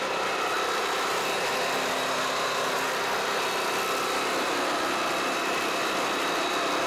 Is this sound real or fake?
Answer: real